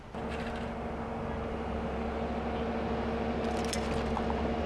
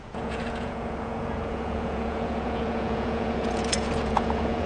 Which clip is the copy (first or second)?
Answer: second